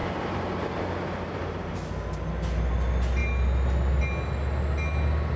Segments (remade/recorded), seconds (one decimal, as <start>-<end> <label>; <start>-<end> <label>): 0.0-1.8 remade; 1.8-5.4 recorded